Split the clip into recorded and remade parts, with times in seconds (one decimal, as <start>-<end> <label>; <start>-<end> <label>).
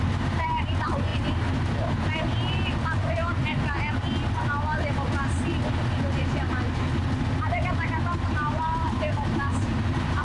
0.0-10.2 recorded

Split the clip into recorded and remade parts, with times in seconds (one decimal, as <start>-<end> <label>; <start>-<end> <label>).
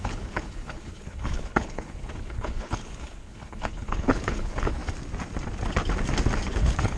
0.0-4.8 remade; 4.8-6.5 recorded; 6.5-7.0 remade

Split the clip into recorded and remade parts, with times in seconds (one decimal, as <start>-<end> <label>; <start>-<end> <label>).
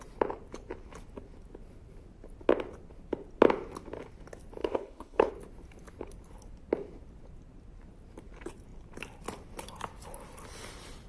0.0-4.6 recorded; 4.6-5.3 remade; 5.3-11.1 recorded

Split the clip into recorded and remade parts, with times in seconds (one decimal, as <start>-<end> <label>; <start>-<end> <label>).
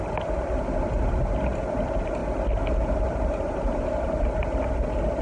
0.0-5.2 recorded